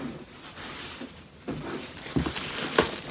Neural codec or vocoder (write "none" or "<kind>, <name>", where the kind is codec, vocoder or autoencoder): vocoder, BigVGAN v2